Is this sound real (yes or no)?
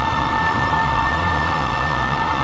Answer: no